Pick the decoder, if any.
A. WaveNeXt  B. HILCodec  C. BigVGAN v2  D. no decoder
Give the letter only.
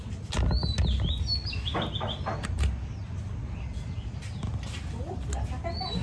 D